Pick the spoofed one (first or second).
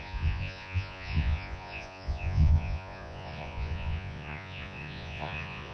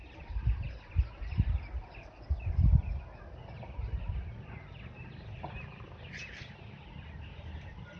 first